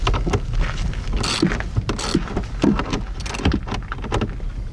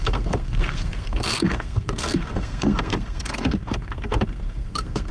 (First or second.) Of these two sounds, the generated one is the second